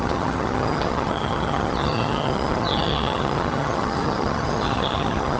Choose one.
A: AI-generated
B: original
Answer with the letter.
A